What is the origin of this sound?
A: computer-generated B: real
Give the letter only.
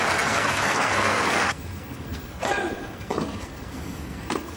A